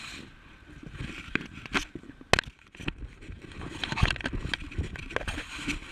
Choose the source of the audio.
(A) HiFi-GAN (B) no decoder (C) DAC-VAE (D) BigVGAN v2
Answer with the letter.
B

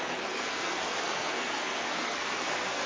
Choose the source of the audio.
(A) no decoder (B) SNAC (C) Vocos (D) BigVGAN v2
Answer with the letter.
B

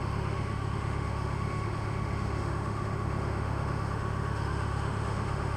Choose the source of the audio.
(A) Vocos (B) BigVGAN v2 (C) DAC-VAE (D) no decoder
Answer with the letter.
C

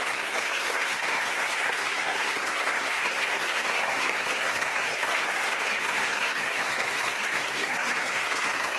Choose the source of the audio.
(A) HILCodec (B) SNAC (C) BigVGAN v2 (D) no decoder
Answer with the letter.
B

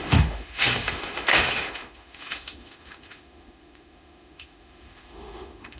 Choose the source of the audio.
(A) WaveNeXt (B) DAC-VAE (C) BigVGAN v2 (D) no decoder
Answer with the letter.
B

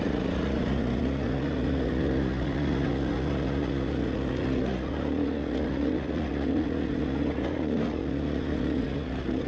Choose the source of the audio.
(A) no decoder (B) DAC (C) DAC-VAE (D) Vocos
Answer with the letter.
D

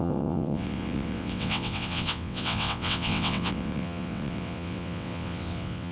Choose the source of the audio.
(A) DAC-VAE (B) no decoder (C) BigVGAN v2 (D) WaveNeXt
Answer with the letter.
D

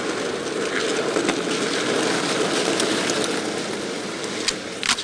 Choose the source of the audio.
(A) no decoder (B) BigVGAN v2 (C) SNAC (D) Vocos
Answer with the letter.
A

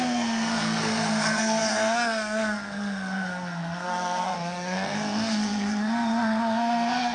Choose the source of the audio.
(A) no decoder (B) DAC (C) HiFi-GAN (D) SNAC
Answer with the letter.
D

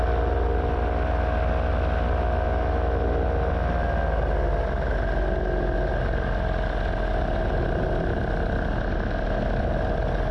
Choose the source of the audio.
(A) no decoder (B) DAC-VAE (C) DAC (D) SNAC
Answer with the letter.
A